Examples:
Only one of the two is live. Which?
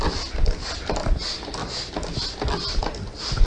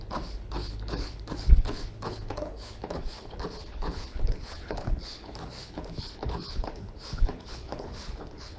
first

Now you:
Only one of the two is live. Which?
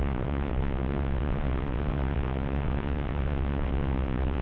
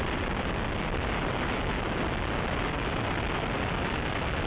second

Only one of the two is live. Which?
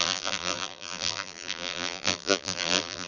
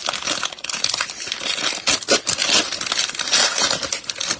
second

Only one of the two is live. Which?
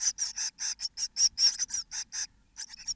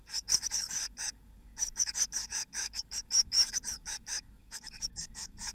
first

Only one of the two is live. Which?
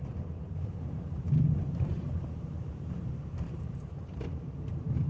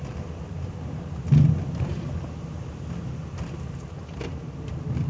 second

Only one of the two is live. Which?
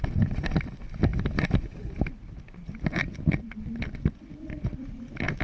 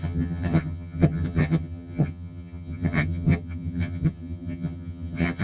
first